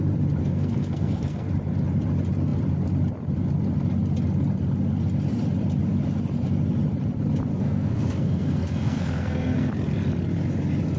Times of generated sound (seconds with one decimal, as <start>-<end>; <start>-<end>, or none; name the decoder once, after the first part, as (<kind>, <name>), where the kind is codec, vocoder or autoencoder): 0.4-1.5 (codec, SNAC); 7.5-9.7